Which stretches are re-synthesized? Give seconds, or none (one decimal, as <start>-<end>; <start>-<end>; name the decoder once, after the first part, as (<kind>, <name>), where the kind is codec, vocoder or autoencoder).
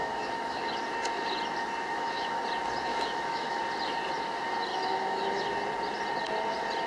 0.0-0.7 (autoencoder, DAC-VAE); 1.9-2.4; 2.9-3.6; 4.7-5.4